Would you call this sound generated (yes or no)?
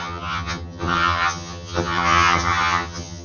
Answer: yes